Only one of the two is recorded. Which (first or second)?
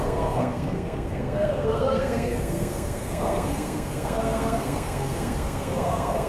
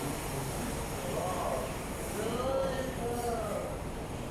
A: second